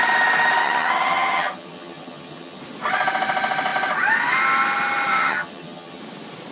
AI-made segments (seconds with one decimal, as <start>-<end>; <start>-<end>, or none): 0.6-2.6; 5.1-6.0